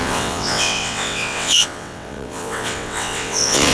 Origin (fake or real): fake